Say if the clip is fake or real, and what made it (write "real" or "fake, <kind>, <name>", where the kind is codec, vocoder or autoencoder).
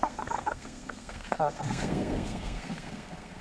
fake, codec, SNAC